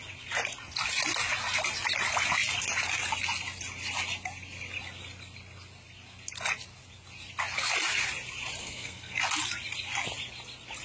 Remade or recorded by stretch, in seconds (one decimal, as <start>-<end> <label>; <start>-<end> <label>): 0.0-8.6 recorded; 8.6-9.2 remade; 9.2-10.8 recorded